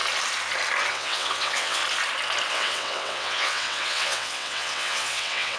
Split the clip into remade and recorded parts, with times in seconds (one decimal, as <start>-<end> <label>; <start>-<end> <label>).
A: 0.0-0.9 recorded; 0.9-1.8 remade; 1.8-2.5 recorded; 2.5-5.6 remade